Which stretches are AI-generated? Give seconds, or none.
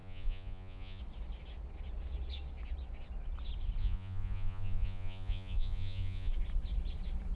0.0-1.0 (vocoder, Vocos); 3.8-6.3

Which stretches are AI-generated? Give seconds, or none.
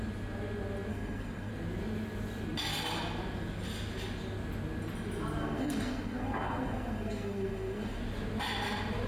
0.9-1.5 (codec, SNAC); 5.4-8.0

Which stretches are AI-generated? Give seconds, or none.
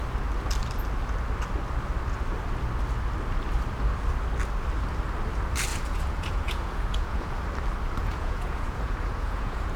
5.7-7.3 (vocoder, Vocos); 8.0-9.8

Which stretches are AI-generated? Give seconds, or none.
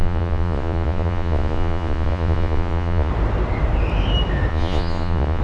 0.0-3.1 (vocoder, Vocos); 4.5-5.4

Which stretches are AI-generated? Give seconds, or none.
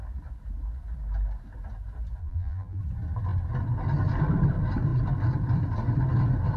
2.2-2.8 (vocoder, BigVGAN v2)